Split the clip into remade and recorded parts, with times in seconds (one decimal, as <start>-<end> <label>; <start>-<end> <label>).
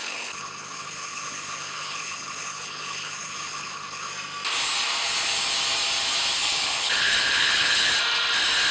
0.0-4.1 remade; 4.1-6.4 recorded; 6.4-7.9 remade; 7.9-8.7 recorded